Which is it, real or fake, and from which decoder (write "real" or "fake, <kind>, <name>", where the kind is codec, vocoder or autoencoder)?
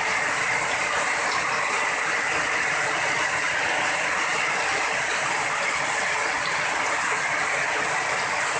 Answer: real